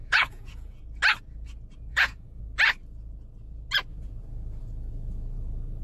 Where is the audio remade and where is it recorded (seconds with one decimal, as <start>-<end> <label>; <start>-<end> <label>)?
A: 0.0-0.8 remade; 0.8-1.9 recorded; 1.9-2.4 remade; 2.4-3.9 recorded; 3.9-5.8 remade

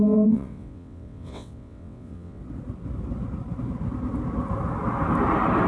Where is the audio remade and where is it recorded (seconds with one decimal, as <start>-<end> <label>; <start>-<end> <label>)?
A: 0.0-2.4 remade; 2.4-5.7 recorded